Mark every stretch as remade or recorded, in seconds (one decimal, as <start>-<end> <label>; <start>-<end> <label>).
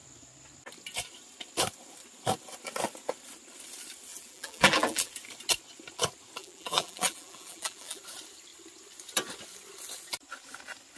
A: 0.0-4.1 recorded; 4.1-5.1 remade; 5.1-6.4 recorded; 6.4-8.0 remade; 8.0-11.0 recorded